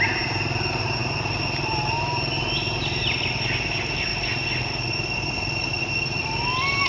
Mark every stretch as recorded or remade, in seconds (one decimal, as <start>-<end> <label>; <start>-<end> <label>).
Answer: 0.0-6.9 recorded